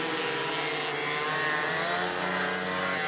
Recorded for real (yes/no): yes